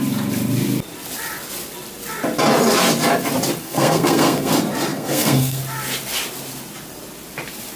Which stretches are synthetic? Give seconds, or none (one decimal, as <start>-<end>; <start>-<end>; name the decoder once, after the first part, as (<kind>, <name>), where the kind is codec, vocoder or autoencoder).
3.6-4.5 (codec, SNAC); 4.9-5.6